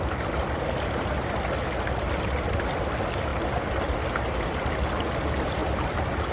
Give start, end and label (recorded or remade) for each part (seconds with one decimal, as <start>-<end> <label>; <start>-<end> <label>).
0.0-6.3 recorded